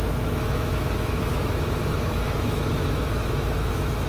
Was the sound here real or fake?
fake